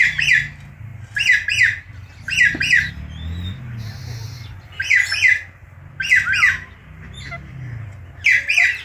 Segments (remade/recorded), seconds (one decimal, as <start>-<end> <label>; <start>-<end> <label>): 0.0-8.8 recorded